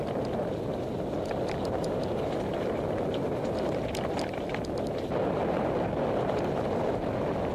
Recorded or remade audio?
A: recorded